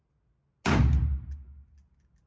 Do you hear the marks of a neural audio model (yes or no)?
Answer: no